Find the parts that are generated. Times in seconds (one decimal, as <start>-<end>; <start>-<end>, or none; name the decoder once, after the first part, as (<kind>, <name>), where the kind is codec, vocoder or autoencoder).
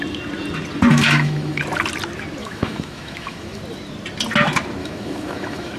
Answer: 0.9-1.6 (autoencoder, DAC-VAE); 2.4-3.6; 4.8-5.8